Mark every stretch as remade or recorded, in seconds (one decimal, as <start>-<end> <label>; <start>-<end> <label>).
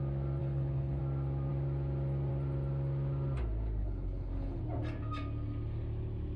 0.0-0.4 recorded; 0.4-1.0 remade; 1.0-3.8 recorded; 3.8-4.6 remade; 4.6-6.4 recorded